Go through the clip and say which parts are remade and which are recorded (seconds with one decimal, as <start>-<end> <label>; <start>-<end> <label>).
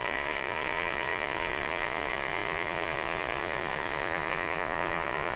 0.0-5.4 remade